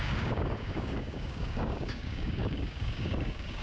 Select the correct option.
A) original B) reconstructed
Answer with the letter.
B